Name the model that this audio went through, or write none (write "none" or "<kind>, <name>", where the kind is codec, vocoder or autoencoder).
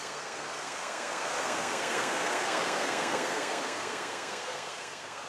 codec, SNAC